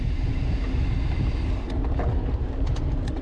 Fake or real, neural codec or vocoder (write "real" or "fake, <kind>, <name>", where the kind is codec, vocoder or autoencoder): real